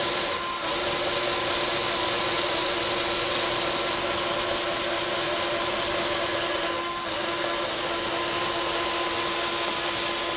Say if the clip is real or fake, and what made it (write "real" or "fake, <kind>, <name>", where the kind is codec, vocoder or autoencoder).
real